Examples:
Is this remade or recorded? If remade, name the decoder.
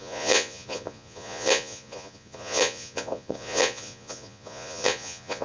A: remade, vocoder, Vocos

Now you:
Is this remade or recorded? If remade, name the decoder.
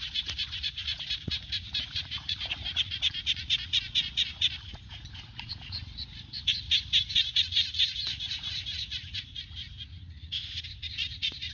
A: remade, vocoder, Vocos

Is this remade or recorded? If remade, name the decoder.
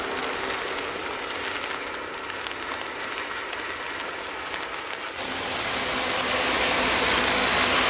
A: recorded